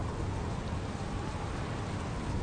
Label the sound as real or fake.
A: real